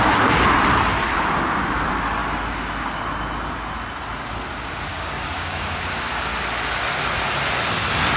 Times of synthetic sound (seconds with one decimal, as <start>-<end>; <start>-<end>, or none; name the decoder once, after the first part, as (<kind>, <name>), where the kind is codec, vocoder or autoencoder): 4.9-5.8 (codec, DAC)